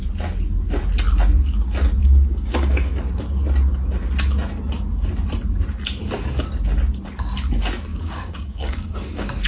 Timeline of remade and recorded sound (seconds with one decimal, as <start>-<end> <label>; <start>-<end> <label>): 0.0-2.0 recorded; 2.0-2.9 remade; 2.9-7.9 recorded; 7.9-9.5 remade